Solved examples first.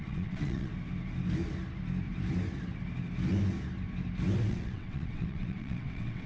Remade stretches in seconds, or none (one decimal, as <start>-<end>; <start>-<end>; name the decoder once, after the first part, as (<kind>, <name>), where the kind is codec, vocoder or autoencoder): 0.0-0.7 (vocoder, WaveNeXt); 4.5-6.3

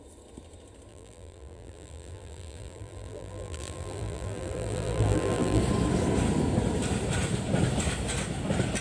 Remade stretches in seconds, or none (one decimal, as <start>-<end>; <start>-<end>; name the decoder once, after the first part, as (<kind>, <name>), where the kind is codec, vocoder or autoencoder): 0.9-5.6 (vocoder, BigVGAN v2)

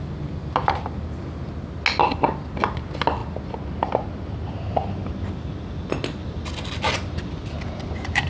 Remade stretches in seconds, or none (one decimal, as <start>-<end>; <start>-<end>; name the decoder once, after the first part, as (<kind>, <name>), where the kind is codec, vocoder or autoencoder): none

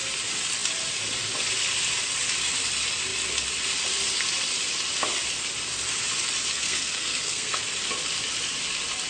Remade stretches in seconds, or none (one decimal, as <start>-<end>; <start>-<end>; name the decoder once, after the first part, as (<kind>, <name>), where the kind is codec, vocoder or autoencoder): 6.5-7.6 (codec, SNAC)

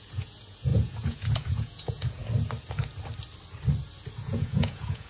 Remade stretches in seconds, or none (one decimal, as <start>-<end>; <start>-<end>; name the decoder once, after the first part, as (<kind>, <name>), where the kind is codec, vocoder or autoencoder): 0.0-2.2 (vocoder, Vocos); 4.2-5.1

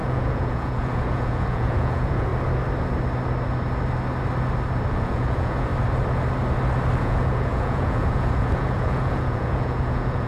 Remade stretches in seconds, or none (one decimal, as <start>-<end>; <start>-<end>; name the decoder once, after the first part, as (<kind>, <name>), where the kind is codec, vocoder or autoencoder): 0.0-2.3 (vocoder, Vocos); 4.9-5.7; 7.0-10.3